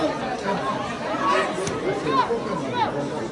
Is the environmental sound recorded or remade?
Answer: recorded